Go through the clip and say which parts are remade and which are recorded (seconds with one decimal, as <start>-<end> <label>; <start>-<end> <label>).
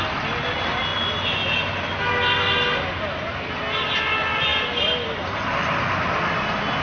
0.0-6.8 recorded